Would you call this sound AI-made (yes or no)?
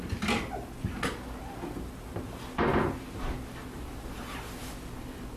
no